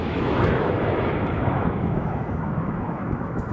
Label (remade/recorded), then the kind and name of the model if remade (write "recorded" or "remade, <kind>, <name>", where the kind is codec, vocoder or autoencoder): remade, autoencoder, DAC-VAE